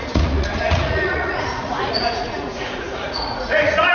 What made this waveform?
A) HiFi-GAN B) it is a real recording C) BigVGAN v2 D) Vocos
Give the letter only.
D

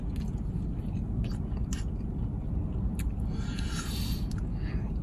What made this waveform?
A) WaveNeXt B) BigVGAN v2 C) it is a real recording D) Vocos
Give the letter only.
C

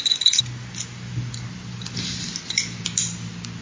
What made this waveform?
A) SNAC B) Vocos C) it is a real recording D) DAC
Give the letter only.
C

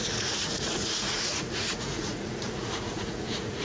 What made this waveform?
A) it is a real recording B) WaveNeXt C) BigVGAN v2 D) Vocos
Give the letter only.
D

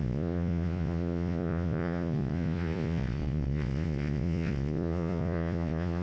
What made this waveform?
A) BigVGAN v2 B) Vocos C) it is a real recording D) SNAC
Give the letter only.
B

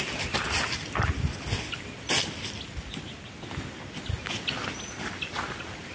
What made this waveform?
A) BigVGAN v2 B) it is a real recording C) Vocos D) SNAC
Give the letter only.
B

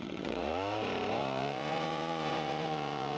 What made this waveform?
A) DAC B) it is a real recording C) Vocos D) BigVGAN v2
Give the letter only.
C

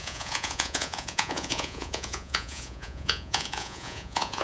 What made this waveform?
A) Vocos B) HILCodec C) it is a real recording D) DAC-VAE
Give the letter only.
A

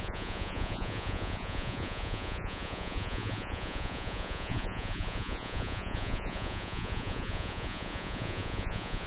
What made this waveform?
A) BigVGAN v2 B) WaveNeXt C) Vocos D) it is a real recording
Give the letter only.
C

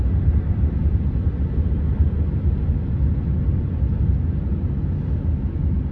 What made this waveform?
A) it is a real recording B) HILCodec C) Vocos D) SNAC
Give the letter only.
A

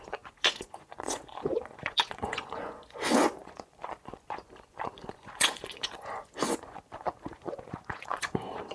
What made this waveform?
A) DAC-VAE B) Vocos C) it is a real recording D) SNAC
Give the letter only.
B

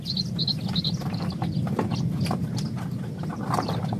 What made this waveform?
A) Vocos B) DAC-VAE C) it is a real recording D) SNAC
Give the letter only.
C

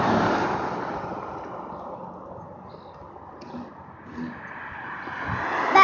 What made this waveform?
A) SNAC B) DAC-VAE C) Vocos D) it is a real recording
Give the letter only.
D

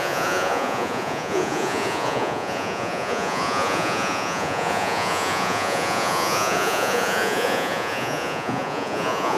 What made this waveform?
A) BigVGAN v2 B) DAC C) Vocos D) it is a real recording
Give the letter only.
C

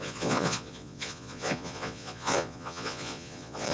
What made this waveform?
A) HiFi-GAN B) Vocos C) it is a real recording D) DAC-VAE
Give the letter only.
B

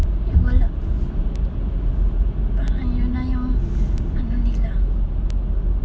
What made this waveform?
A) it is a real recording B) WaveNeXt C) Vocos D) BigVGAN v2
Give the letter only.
A